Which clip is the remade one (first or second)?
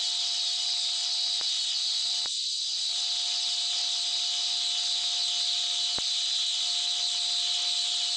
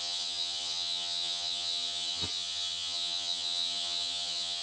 second